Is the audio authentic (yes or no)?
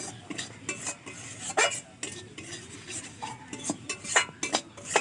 yes